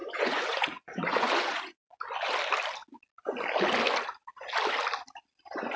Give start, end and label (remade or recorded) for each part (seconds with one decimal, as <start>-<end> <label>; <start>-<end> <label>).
0.0-2.0 remade; 2.0-5.8 recorded